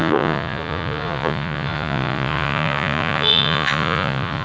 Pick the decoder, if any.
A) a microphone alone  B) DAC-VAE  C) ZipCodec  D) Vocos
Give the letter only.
D